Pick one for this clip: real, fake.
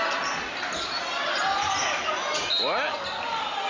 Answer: real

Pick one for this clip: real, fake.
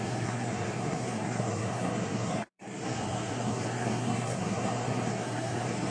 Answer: fake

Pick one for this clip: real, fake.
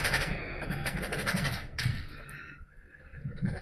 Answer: fake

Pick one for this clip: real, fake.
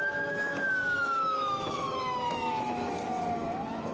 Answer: fake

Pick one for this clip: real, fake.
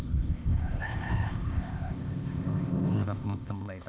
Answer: fake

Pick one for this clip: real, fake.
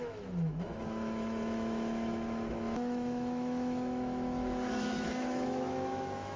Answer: fake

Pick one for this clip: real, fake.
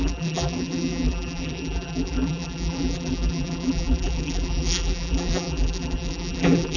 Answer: fake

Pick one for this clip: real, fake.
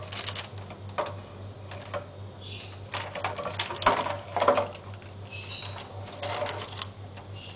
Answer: real